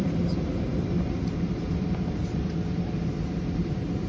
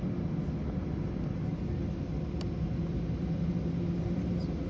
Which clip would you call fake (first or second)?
first